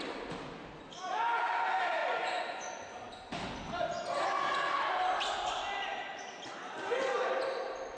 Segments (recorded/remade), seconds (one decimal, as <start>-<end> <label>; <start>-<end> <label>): 0.0-2.0 recorded; 2.0-2.7 remade; 2.7-8.0 recorded